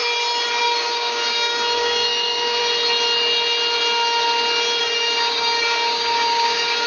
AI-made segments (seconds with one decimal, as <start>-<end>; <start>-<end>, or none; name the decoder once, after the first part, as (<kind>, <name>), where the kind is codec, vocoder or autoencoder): 0.6-2.6 (codec, DAC); 4.8-6.9